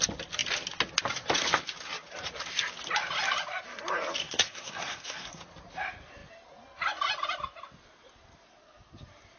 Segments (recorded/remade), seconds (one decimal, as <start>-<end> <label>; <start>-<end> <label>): 0.0-4.2 recorded; 4.2-5.4 remade; 5.4-9.4 recorded